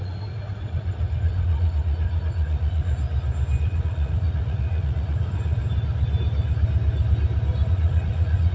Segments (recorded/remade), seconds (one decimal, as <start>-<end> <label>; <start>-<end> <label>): 0.0-2.9 remade; 2.9-3.6 recorded; 3.6-5.6 remade; 5.6-7.7 recorded; 7.7-8.5 remade